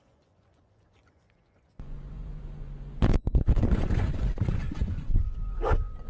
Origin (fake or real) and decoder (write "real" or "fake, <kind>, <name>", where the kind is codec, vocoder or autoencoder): fake, vocoder, Vocos